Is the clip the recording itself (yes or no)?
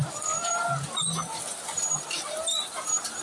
yes